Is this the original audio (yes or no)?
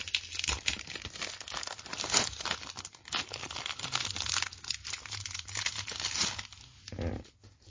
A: yes